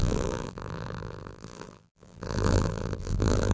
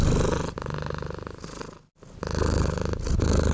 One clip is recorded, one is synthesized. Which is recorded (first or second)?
second